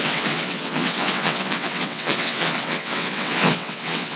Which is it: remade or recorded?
remade